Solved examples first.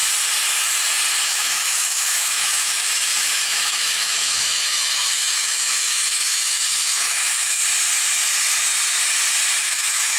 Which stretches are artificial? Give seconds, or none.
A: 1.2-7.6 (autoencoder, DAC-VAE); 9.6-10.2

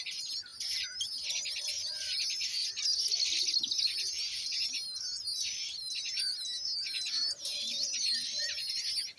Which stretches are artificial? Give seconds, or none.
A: none

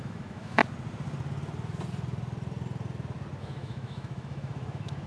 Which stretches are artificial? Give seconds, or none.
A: 0.0-0.6 (autoencoder, DAC-VAE); 3.4-5.1

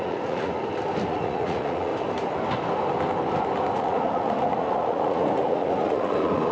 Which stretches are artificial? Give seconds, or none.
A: 0.0-0.5 (vocoder, Vocos); 1.1-1.9; 3.7-6.5